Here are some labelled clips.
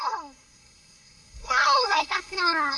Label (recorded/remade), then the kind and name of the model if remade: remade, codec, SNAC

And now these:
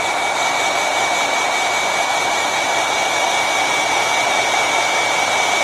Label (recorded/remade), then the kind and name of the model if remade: recorded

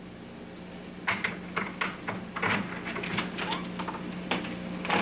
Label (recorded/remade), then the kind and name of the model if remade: recorded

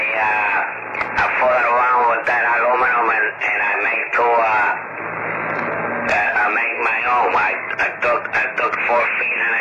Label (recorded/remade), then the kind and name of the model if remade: recorded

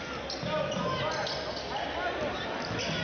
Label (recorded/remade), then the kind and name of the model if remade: recorded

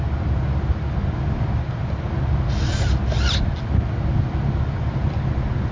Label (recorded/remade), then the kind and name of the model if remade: recorded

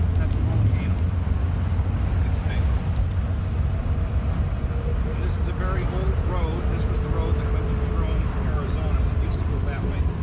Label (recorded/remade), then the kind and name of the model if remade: recorded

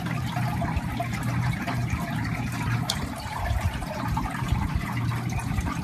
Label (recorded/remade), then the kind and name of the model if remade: remade, vocoder, BigVGAN v2